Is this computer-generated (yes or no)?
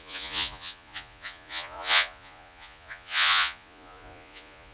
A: yes